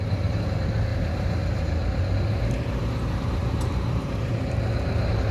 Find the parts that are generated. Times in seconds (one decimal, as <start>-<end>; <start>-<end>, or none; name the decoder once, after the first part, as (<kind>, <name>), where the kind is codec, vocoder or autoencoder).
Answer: 0.9-2.0 (vocoder, BigVGAN v2); 3.4-4.3